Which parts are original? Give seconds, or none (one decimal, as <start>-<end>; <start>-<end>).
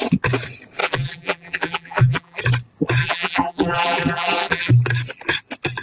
0.0-0.8; 2.4-3.0; 4.7-5.8